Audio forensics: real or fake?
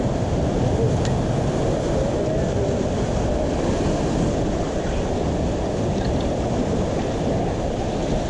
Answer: real